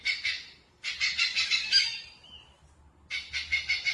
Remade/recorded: recorded